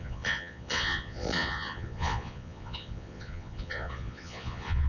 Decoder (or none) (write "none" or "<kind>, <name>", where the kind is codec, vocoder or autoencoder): vocoder, Vocos